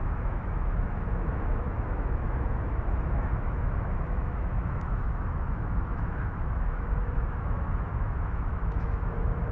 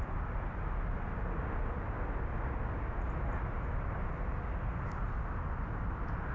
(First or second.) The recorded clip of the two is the second